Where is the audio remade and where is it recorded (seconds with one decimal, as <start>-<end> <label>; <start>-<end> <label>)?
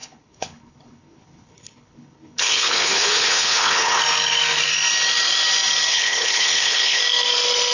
0.0-4.0 remade; 4.0-5.9 recorded; 5.9-7.0 remade; 7.0-7.7 recorded